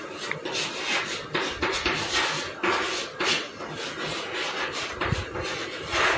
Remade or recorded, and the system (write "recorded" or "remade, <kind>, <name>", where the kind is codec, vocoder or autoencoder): recorded